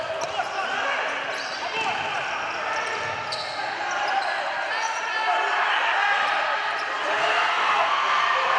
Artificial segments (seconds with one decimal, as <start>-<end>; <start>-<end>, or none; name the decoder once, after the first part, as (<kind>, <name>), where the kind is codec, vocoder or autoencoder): 7.2-8.2 (codec, SNAC)